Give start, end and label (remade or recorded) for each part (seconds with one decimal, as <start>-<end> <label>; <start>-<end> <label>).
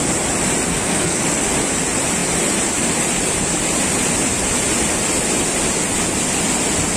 0.0-0.7 recorded; 0.7-1.2 remade; 1.2-7.0 recorded